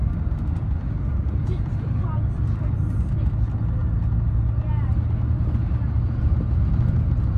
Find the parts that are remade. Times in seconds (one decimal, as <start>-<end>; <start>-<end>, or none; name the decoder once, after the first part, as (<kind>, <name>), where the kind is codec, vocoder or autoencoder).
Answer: none